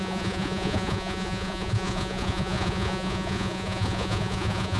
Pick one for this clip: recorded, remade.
remade